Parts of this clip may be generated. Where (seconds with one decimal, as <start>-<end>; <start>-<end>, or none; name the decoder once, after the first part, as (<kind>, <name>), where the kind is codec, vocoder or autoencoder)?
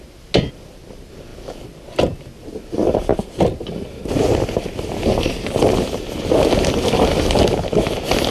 1.3-2.3 (vocoder, BigVGAN v2); 3.1-4.7